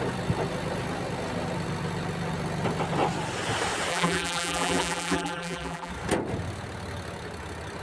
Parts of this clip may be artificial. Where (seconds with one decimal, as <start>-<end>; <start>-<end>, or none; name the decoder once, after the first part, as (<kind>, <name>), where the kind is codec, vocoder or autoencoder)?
3.9-5.9 (vocoder, BigVGAN v2)